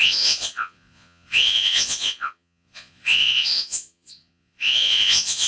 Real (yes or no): no